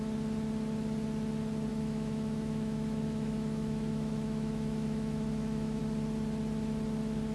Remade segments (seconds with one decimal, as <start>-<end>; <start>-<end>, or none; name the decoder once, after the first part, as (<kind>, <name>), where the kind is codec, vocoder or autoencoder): 1.7-5.8 (autoencoder, DAC-VAE)